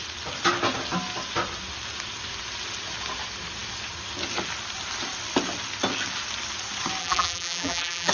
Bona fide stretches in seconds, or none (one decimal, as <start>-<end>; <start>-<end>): 0.0-7.0